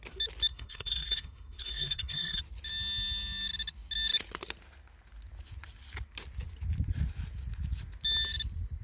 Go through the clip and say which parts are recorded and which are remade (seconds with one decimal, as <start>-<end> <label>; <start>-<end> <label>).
0.0-0.5 recorded; 0.5-2.4 remade; 2.4-8.8 recorded